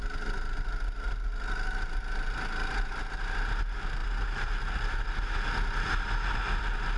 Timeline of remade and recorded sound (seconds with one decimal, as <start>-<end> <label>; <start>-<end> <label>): 0.0-7.0 recorded